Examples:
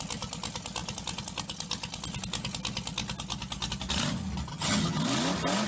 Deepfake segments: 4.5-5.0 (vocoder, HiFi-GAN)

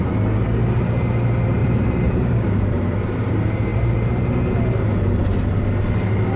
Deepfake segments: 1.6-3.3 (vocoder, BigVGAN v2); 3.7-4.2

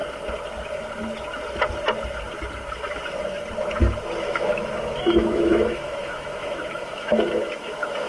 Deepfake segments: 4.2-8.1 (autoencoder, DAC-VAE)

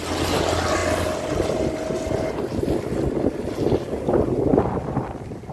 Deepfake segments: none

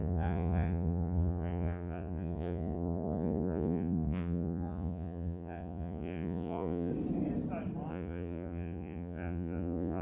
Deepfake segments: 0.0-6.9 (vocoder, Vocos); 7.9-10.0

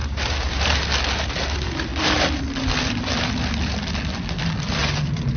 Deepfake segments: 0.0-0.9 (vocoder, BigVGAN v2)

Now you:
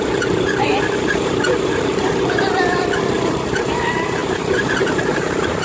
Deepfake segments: 0.0-5.6 (vocoder, BigVGAN v2)